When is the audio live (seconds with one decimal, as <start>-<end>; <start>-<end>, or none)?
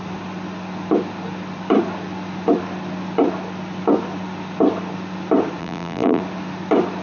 0.0-5.6; 6.2-7.0